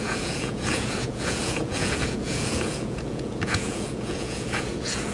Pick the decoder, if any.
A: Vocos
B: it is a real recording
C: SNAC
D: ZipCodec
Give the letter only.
A